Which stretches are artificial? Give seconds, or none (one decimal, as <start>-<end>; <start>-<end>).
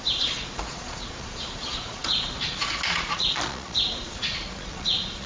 0.0-5.3